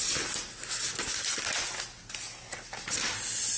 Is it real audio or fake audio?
real